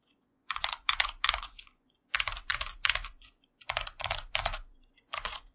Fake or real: fake